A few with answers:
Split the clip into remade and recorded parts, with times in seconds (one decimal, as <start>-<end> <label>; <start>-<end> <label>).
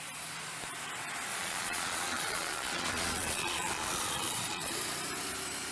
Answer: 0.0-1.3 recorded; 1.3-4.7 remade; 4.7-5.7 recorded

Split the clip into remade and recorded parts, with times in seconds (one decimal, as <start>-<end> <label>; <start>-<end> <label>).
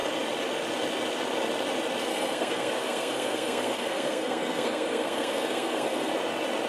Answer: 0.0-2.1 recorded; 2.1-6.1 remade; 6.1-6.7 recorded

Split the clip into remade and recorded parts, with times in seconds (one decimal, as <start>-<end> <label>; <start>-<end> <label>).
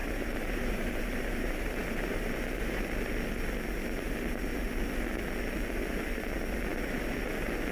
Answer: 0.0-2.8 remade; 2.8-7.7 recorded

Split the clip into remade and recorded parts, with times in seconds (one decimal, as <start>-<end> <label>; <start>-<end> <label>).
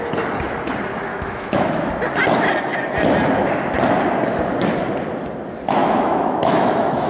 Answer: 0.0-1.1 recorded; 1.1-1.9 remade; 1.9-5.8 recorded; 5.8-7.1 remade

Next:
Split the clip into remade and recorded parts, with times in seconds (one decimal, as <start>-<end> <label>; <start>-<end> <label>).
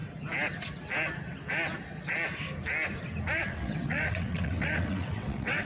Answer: 0.0-3.4 recorded; 3.4-5.6 remade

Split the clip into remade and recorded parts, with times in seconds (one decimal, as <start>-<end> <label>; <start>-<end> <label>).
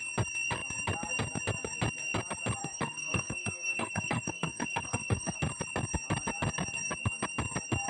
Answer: 0.0-2.6 recorded; 2.6-5.4 remade; 5.4-7.9 recorded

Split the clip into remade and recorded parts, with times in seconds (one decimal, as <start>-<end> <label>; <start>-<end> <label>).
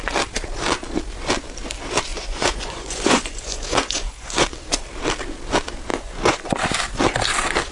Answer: 0.0-2.1 recorded; 2.1-4.8 remade; 4.8-5.9 recorded; 5.9-6.5 remade; 6.5-7.7 recorded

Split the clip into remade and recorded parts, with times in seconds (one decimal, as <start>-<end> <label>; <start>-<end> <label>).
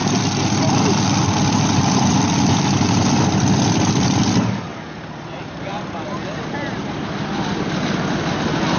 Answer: 0.0-8.8 recorded